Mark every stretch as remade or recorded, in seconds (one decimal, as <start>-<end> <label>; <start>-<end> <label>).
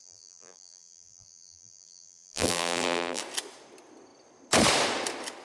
0.0-3.2 remade; 3.2-5.4 recorded